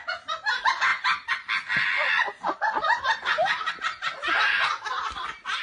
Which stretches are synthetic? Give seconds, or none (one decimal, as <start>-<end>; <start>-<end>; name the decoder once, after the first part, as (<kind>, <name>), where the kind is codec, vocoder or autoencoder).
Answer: none